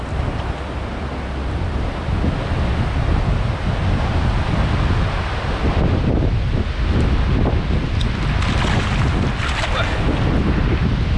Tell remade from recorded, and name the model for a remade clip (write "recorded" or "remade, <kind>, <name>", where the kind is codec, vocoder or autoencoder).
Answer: recorded